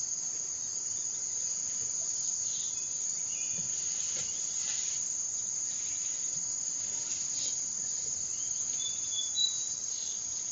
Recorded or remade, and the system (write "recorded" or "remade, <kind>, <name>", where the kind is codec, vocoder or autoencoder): recorded